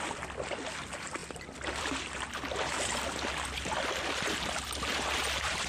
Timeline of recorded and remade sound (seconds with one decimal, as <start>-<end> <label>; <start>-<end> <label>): 0.0-4.9 recorded; 4.9-5.7 remade